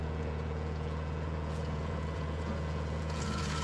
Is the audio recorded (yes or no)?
no